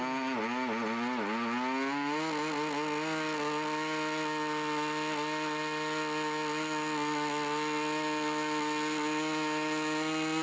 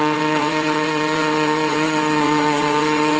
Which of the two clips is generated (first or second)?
second